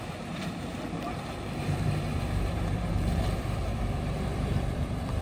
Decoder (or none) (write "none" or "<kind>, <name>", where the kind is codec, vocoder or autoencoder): vocoder, BigVGAN v2